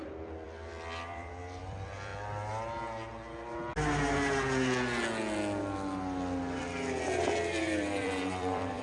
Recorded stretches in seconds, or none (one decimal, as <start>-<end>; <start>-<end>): 2.1-6.6